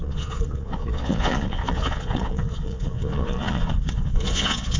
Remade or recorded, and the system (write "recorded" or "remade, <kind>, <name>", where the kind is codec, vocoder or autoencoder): remade, vocoder, Vocos